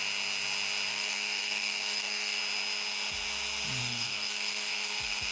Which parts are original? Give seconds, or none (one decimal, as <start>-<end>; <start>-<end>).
0.0-0.9; 2.4-3.8